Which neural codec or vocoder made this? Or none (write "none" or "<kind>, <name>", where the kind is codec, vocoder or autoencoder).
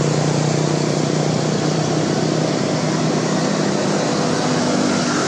none